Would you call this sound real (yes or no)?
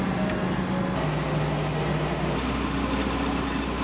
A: yes